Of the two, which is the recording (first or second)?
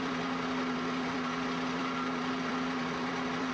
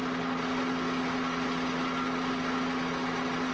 second